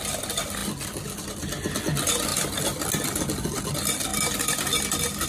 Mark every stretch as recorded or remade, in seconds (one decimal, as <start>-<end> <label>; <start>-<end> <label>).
0.0-5.3 recorded

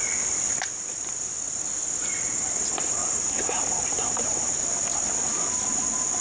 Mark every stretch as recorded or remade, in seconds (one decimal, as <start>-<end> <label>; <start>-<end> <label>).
0.0-3.0 recorded; 3.0-3.6 remade; 3.6-6.2 recorded

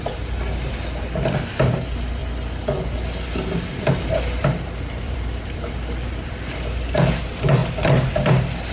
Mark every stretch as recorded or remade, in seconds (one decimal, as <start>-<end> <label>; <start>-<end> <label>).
0.0-2.2 remade; 2.2-4.1 recorded; 4.1-7.6 remade; 7.6-8.1 recorded; 8.1-8.7 remade

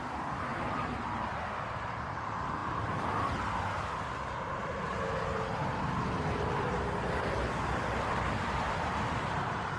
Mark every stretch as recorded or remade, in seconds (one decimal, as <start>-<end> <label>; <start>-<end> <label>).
0.0-0.5 remade; 0.5-1.4 recorded; 1.4-2.6 remade; 2.6-4.0 recorded; 4.0-9.8 remade